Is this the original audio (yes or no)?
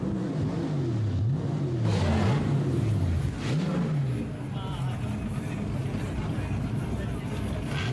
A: yes